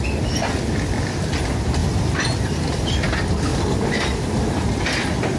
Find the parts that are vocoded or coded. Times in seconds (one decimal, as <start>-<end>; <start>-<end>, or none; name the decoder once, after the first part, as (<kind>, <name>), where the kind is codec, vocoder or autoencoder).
none